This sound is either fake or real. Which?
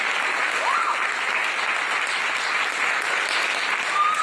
real